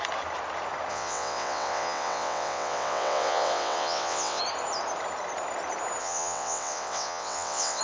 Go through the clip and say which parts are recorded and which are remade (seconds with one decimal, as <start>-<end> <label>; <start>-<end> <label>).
0.0-0.9 recorded; 0.9-4.4 remade; 4.4-6.0 recorded; 6.0-7.8 remade